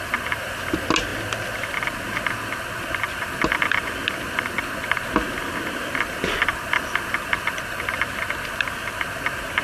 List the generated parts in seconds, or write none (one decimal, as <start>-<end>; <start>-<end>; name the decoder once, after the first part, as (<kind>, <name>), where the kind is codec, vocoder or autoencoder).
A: none